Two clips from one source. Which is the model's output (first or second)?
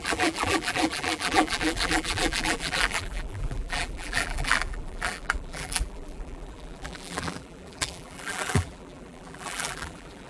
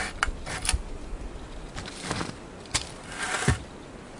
first